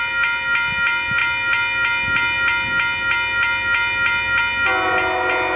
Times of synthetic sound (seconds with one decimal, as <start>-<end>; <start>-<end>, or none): none